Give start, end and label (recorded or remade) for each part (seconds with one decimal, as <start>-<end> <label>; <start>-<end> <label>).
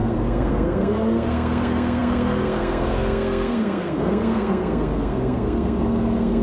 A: 0.0-6.4 remade